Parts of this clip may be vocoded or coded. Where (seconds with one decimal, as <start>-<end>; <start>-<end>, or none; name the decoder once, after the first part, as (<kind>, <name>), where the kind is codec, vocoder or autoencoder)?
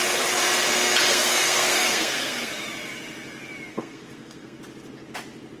1.1-2.5 (codec, SNAC); 3.7-4.6